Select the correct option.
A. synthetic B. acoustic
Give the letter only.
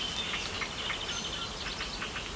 B